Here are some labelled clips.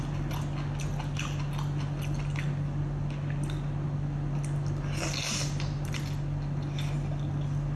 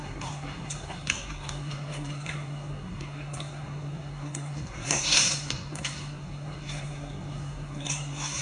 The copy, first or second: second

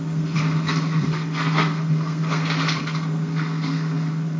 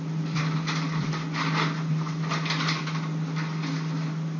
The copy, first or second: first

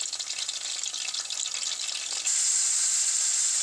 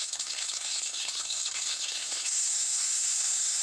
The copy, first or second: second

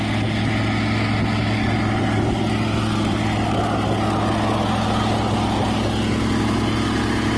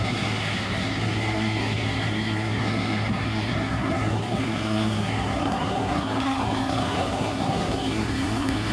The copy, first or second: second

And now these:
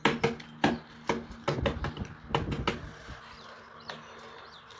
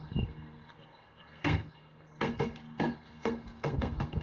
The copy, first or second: second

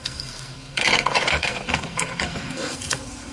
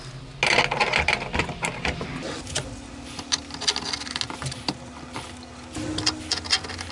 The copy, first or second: first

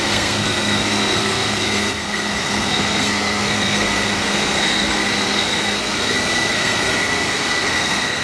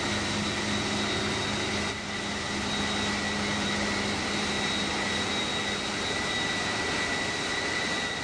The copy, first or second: first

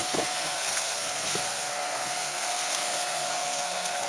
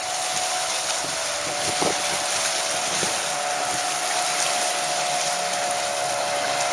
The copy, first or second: first